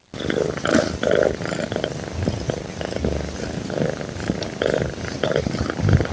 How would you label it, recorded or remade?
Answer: recorded